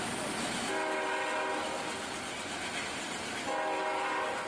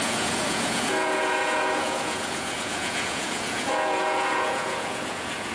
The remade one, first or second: second